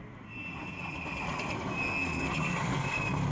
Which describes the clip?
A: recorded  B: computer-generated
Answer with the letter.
A